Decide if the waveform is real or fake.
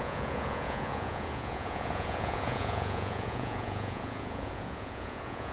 fake